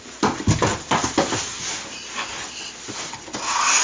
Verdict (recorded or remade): recorded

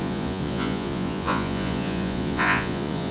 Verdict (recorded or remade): remade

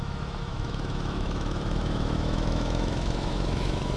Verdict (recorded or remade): remade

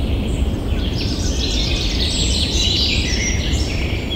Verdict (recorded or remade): remade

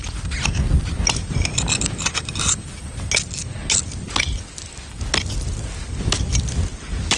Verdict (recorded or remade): recorded